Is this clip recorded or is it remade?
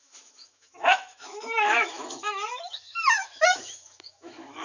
remade